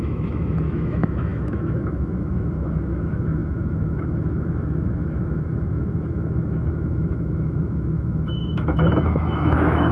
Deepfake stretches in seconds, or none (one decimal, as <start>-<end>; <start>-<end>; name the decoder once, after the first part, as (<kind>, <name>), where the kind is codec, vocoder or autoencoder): 0.0-9.9 (autoencoder, DAC-VAE)